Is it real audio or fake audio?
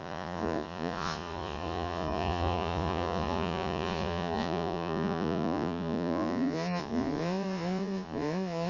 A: fake